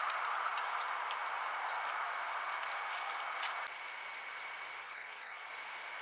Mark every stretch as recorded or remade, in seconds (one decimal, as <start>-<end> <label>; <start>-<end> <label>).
0.0-4.8 recorded; 4.8-5.5 remade; 5.5-6.0 recorded